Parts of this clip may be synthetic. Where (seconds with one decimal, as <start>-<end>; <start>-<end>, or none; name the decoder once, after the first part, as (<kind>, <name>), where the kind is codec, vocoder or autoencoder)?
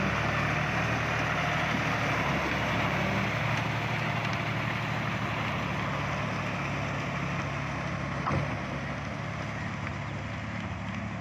none